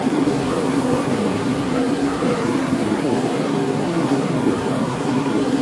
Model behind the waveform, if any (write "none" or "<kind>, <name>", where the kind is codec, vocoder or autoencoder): codec, SNAC